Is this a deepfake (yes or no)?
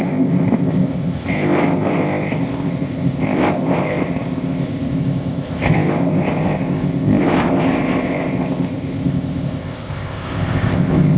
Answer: yes